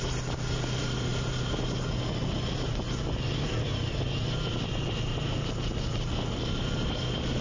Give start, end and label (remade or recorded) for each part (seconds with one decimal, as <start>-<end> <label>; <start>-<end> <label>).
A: 0.0-7.4 recorded